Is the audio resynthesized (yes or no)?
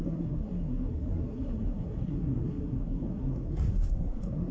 yes